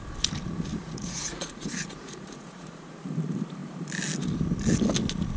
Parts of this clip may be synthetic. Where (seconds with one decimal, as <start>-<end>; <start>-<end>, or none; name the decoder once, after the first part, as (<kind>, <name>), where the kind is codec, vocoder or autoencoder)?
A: 0.8-2.9 (vocoder, Vocos)